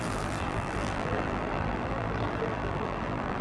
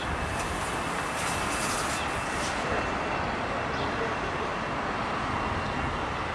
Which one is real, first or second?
second